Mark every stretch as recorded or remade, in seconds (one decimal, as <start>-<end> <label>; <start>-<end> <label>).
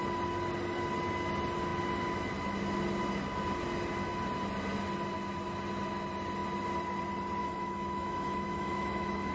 0.0-7.4 recorded; 7.4-9.3 remade